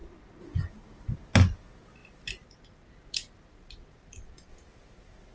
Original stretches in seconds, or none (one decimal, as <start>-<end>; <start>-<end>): 0.0-5.3

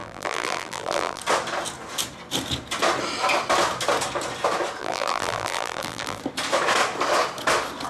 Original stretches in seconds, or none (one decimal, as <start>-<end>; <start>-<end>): 1.2-4.8; 6.2-7.9

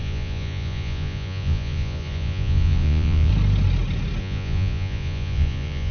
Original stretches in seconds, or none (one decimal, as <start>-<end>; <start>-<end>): 3.3-4.2

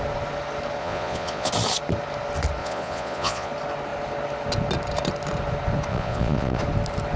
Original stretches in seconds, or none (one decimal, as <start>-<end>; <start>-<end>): 0.0-0.8; 1.5-2.6; 3.5-5.9; 6.6-7.2

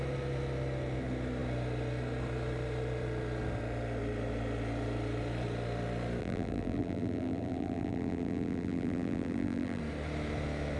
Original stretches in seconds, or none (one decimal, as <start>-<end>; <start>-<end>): 0.0-6.2; 9.8-10.8

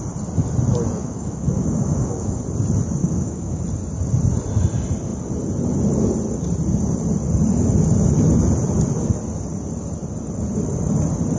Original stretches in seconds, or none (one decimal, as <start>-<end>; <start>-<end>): 0.0-1.0; 2.4-3.0; 3.6-11.4

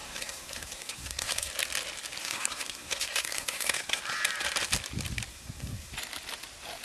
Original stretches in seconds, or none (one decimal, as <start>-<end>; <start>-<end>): 1.5-2.2; 4.0-5.3; 5.9-6.8

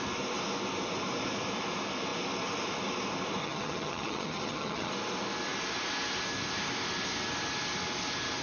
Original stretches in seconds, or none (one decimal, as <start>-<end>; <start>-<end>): 0.0-3.4; 4.9-8.4